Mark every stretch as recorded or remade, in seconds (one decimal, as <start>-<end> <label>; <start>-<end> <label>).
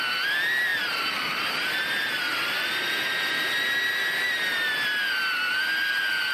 0.0-0.7 recorded; 0.7-1.5 remade; 1.5-6.3 recorded